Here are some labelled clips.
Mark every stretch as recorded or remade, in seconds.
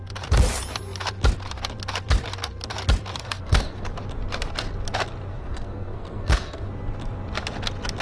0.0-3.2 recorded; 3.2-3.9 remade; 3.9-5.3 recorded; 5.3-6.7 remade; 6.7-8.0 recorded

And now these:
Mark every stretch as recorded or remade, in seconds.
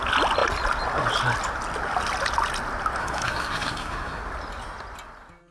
0.0-3.0 recorded; 3.0-4.2 remade; 4.2-5.5 recorded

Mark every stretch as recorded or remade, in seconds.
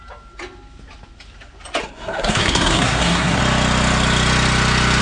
0.0-1.8 recorded; 1.8-3.4 remade; 3.4-5.0 recorded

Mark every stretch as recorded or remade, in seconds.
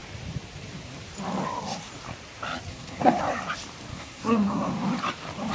0.0-2.7 recorded; 2.7-3.2 remade; 3.2-3.9 recorded; 3.9-4.7 remade; 4.7-5.5 recorded